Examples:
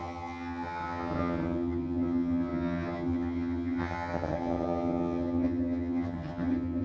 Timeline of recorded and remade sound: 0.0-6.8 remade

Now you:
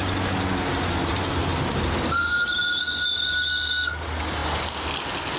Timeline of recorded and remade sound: 0.0-5.4 recorded

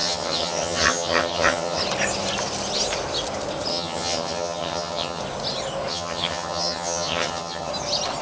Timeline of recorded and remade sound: 0.0-1.8 remade; 1.8-3.7 recorded; 3.7-5.2 remade; 5.2-5.9 recorded; 5.9-7.7 remade; 7.7-8.2 recorded

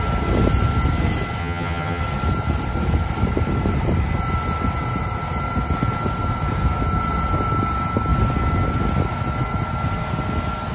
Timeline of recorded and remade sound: 0.0-1.4 recorded; 1.4-2.0 remade; 2.0-10.7 recorded

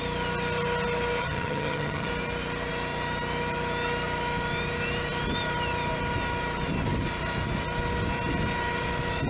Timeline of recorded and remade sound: 0.0-1.2 recorded; 1.2-2.1 remade; 2.1-9.3 recorded

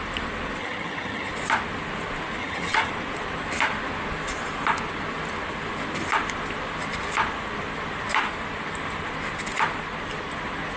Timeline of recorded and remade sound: 0.0-0.6 recorded; 0.6-1.3 remade; 1.3-2.4 recorded; 2.4-2.9 remade; 2.9-10.8 recorded